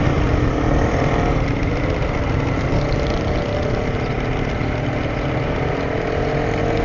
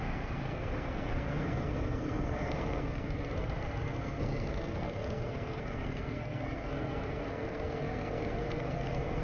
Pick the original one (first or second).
first